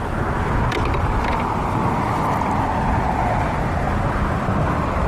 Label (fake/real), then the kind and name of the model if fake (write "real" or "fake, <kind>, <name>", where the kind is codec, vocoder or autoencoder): real